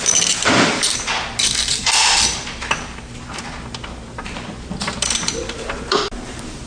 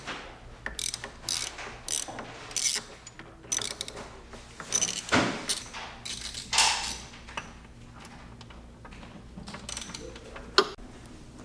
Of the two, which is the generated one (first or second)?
first